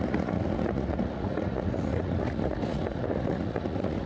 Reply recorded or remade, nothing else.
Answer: remade